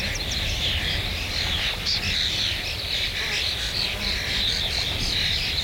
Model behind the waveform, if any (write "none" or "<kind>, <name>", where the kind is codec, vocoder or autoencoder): none